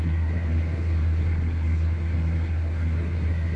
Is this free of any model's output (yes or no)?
no